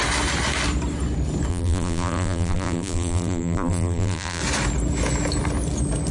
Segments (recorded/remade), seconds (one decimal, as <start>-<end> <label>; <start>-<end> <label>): 0.0-1.5 recorded; 1.5-4.4 remade; 4.4-6.1 recorded